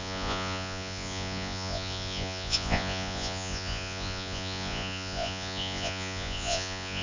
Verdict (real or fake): fake